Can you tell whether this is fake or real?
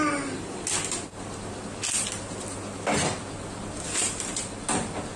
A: real